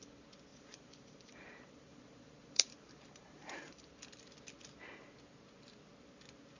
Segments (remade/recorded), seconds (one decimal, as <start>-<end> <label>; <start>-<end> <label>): 0.0-0.5 recorded; 0.5-3.9 remade; 3.9-6.6 recorded